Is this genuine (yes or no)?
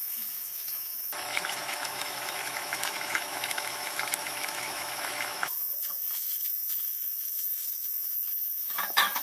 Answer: no